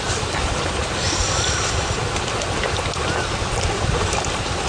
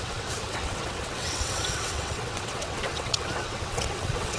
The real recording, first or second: first